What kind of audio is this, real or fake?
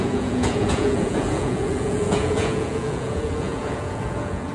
fake